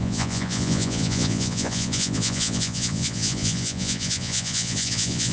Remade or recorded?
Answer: remade